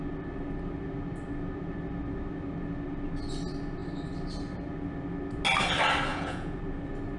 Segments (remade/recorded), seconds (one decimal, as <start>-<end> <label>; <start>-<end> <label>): 0.0-6.1 recorded; 6.1-6.6 remade; 6.6-7.2 recorded